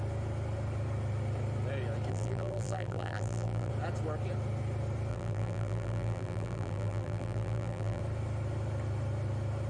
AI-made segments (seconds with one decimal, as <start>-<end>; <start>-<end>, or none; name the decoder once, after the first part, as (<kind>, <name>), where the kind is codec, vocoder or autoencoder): 2.1-3.7 (vocoder, BigVGAN v2); 5.1-8.0